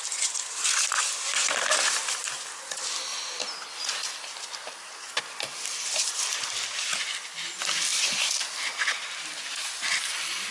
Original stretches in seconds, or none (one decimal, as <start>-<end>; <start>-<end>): 3.1-3.7